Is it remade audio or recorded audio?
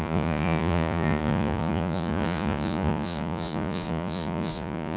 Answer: remade